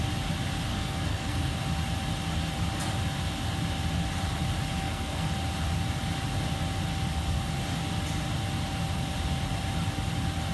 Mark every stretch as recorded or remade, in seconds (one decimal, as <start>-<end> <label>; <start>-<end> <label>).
0.0-0.7 recorded; 0.7-1.6 remade; 1.6-4.8 recorded; 4.8-5.3 remade; 5.3-10.5 recorded